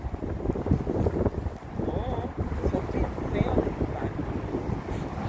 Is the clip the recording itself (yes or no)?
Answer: yes